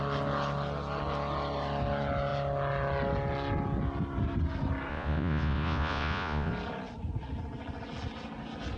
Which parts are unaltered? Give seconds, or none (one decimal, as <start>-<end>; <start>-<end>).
0.0-4.9; 6.5-8.8